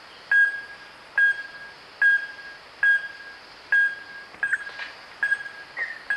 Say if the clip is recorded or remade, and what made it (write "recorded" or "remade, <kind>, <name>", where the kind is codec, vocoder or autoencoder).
recorded